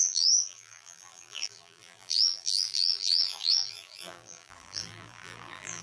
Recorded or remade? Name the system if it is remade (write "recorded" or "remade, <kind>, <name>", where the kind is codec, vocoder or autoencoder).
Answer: remade, vocoder, BigVGAN v2